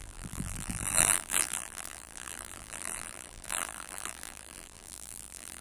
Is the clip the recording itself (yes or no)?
no